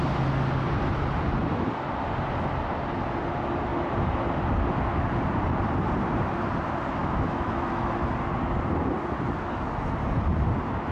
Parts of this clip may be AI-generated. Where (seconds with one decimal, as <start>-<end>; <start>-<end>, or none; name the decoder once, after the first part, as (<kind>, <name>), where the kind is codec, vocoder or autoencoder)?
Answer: 7.0-7.9 (autoencoder, DAC-VAE)